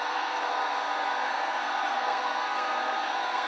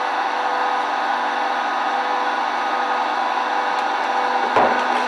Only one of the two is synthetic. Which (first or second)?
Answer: first